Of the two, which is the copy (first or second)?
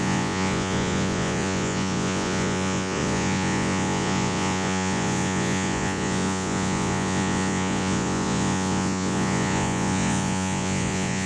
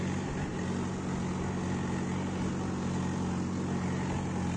first